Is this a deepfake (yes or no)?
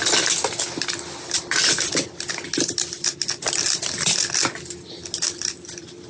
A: no